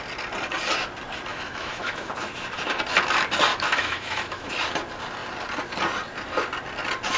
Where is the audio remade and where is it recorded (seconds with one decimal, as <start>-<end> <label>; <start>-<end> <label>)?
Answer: 0.0-1.3 recorded; 1.3-2.1 remade; 2.1-3.5 recorded; 3.5-4.5 remade; 4.5-7.2 recorded

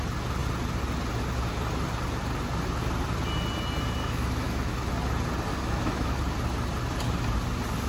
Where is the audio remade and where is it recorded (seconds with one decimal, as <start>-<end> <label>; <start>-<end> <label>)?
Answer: 0.0-4.0 recorded; 4.0-4.9 remade; 4.9-5.5 recorded; 5.5-6.2 remade; 6.2-7.9 recorded

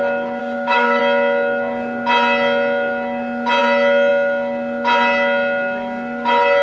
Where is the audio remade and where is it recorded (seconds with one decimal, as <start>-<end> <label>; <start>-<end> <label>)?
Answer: 0.0-0.4 recorded; 0.4-1.0 remade; 1.0-6.6 recorded

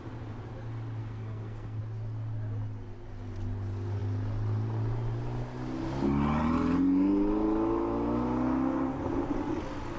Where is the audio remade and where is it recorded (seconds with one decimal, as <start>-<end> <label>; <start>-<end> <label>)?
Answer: 0.0-1.0 recorded; 1.0-1.8 remade; 1.8-10.0 recorded

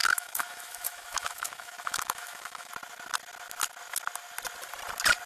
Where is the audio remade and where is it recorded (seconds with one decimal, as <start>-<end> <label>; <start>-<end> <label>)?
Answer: 0.0-2.7 remade; 2.7-5.3 recorded

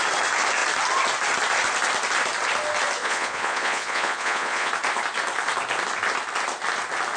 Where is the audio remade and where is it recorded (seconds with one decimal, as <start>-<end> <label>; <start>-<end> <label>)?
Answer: 0.0-3.0 recorded; 3.0-4.7 remade; 4.7-7.2 recorded

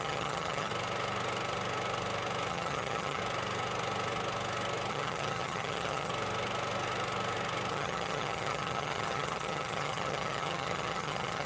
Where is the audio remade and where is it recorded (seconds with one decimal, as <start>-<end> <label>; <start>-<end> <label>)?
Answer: 0.0-0.7 remade; 0.7-2.5 recorded; 2.5-3.2 remade; 3.2-4.9 recorded; 4.9-6.1 remade; 6.1-7.7 recorded; 7.7-11.5 remade